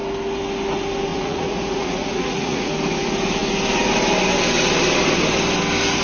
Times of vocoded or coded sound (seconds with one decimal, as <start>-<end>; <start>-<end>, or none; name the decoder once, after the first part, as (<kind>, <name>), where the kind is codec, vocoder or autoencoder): 1.1-2.7 (vocoder, Vocos)